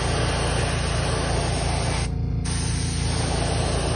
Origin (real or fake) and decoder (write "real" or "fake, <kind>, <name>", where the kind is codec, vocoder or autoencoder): real